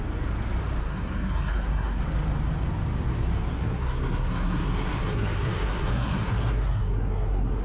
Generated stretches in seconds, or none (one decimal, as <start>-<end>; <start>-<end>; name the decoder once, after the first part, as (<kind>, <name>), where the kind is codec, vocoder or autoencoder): 0.8-2.0 (codec, SNAC); 3.5-7.6